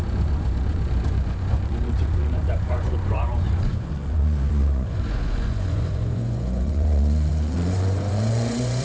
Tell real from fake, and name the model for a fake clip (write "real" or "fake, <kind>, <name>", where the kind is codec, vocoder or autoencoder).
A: fake, vocoder, Vocos